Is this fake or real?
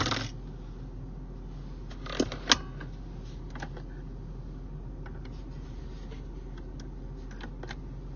real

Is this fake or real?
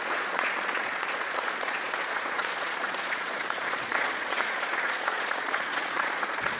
fake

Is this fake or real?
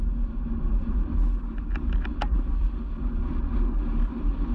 real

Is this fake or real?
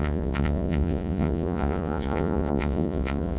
fake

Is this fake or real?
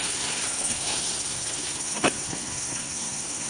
fake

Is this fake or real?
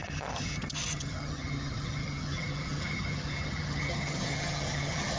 fake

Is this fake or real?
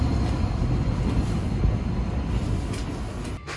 real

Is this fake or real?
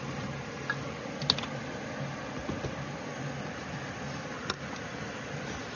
real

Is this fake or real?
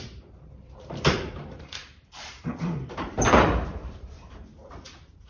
fake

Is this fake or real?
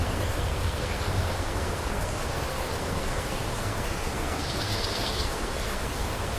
fake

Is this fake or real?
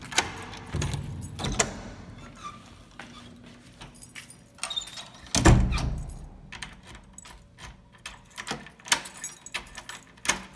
real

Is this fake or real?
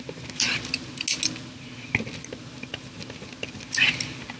real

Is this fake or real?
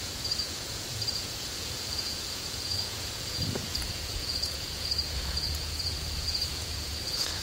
fake